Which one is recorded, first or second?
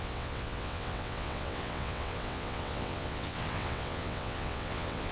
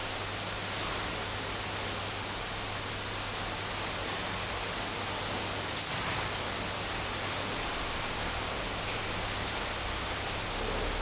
second